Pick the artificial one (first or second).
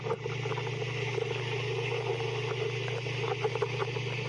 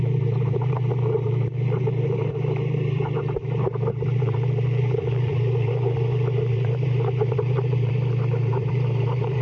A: second